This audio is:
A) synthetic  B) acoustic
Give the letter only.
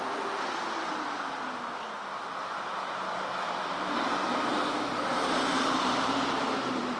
B